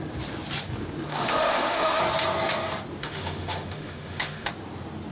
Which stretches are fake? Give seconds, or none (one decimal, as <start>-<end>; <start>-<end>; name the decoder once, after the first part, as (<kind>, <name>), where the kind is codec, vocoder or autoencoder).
1.1-2.0 (autoencoder, DAC-VAE); 3.0-4.5